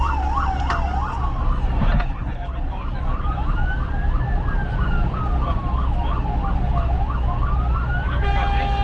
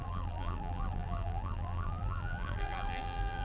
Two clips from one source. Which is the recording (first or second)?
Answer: first